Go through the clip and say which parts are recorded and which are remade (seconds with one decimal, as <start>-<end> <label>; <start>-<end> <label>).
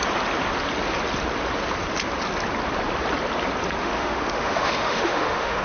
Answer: 0.0-3.8 recorded; 3.8-5.6 remade